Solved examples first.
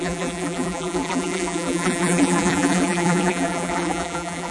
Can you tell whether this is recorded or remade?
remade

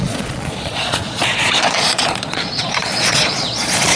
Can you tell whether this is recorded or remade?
remade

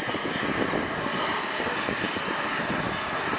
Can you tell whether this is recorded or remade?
recorded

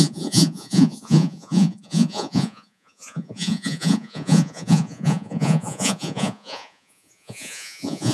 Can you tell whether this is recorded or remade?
remade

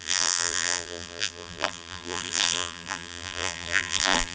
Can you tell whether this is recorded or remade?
remade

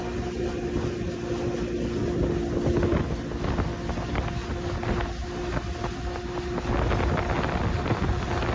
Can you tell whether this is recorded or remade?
recorded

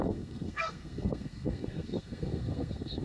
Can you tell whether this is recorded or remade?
remade